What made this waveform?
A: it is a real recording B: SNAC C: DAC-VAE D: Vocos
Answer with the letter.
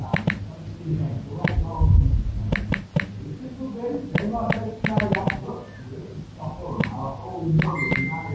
A